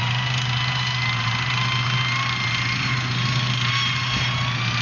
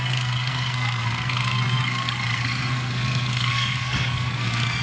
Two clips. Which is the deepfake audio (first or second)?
second